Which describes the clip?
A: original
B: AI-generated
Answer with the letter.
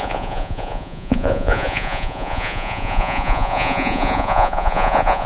B